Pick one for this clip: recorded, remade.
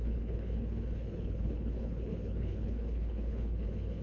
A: remade